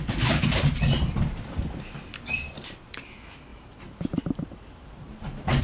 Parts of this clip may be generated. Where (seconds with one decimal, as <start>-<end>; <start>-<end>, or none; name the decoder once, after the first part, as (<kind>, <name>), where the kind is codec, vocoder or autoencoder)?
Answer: 0.0-1.6 (vocoder, BigVGAN v2); 3.5-5.6